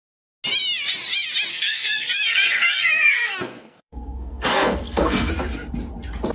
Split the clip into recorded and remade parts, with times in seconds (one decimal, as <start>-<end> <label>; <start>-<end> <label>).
0.0-1.5 recorded; 1.5-5.3 remade; 5.3-6.3 recorded